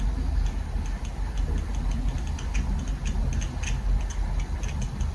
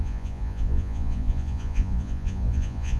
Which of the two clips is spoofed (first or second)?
second